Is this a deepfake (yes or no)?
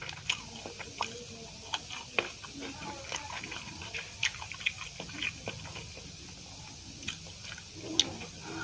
no